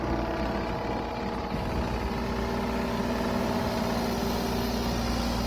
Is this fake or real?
real